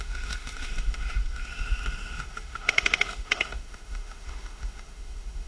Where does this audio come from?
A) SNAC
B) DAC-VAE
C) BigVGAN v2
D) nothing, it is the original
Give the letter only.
B